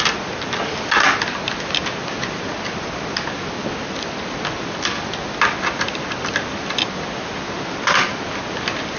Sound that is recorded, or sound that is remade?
recorded